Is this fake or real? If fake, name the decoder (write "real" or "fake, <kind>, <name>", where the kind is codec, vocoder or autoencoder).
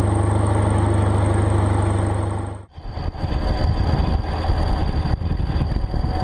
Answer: real